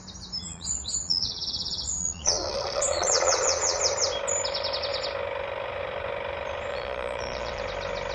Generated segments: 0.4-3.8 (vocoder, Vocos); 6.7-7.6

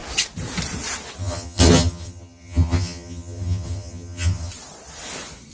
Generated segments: 1.2-4.5 (vocoder, HiFi-GAN)

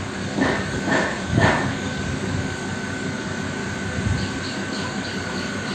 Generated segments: 0.0-3.6 (codec, DAC); 4.4-5.7

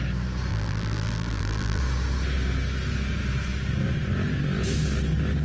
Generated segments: 0.5-1.8 (vocoder, BigVGAN v2)

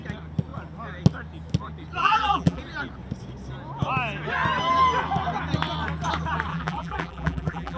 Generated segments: 2.0-2.6 (vocoder, BigVGAN v2); 6.5-7.8

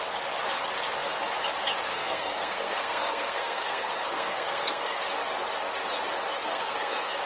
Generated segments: 1.9-5.0 (codec, SNAC); 6.4-7.3